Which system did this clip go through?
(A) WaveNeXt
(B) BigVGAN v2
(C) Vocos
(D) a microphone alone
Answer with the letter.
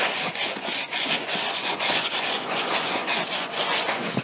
C